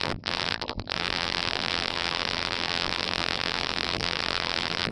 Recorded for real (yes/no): no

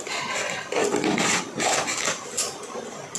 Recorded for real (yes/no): yes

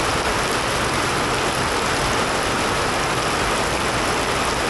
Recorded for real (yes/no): yes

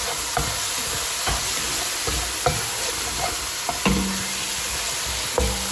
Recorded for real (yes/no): yes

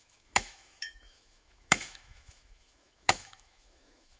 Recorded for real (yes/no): no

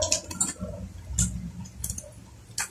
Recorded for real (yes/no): yes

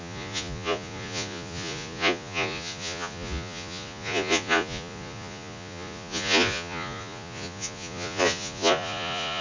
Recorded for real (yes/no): no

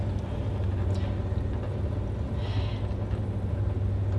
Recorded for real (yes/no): yes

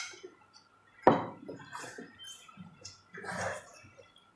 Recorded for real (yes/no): yes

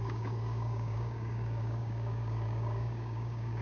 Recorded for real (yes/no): no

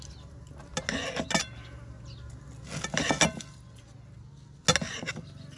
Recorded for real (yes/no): yes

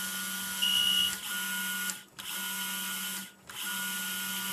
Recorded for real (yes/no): yes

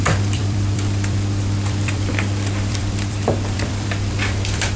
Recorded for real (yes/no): no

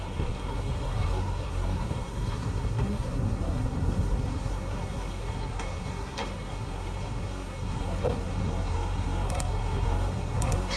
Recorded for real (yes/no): no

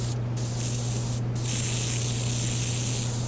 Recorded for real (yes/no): yes